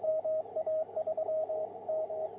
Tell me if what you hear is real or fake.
real